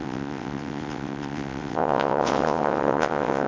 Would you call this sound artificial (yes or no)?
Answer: yes